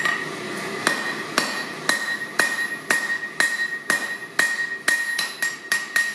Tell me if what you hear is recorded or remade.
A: recorded